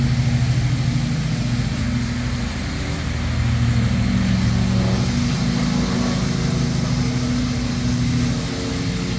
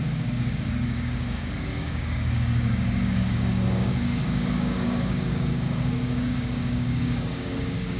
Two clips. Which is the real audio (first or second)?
first